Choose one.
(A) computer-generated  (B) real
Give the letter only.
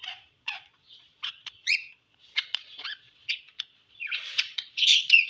A